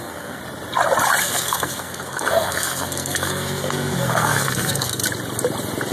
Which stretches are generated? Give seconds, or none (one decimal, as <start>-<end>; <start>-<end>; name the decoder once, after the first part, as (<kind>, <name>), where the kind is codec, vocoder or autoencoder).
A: 0.0-0.4 (codec, SNAC); 1.2-5.0